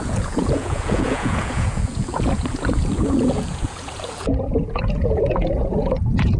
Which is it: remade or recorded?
remade